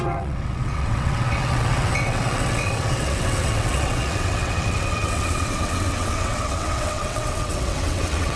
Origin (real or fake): fake